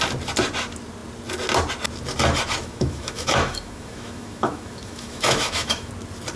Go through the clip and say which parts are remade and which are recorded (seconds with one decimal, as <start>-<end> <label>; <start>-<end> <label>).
0.0-2.6 recorded; 2.6-5.9 remade; 5.9-6.4 recorded